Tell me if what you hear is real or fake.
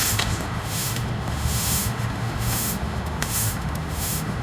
fake